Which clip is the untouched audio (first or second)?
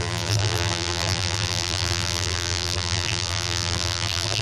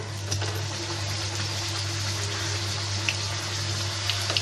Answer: second